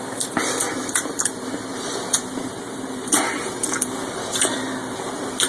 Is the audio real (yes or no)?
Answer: no